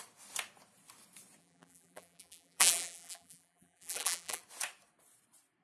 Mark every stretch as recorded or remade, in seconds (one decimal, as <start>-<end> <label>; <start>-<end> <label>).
0.0-1.4 recorded; 1.4-4.4 remade; 4.4-5.6 recorded